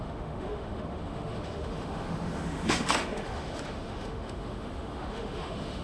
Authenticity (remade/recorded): remade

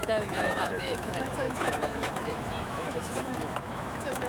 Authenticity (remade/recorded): remade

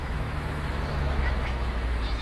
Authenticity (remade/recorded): remade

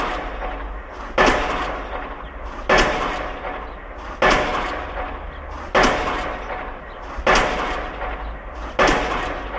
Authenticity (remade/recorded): recorded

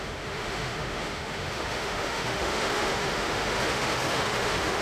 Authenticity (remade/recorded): remade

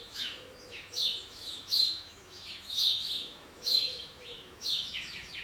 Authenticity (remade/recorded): remade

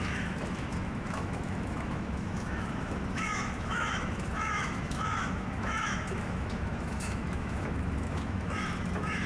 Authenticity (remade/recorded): remade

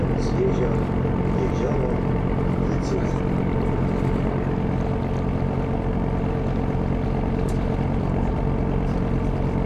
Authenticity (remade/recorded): recorded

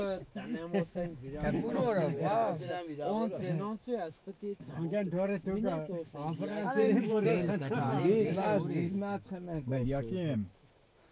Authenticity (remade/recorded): remade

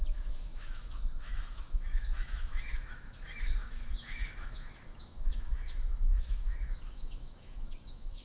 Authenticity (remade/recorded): remade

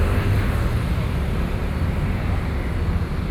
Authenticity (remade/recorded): recorded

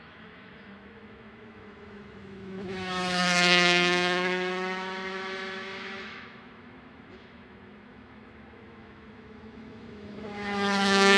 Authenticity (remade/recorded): remade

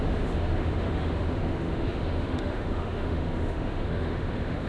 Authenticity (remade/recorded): remade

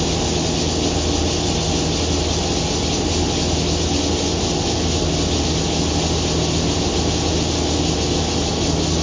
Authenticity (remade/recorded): recorded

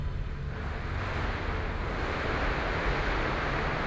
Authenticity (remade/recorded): recorded